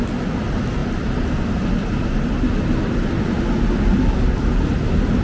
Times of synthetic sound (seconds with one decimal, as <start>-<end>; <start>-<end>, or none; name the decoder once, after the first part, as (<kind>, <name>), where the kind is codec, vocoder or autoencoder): none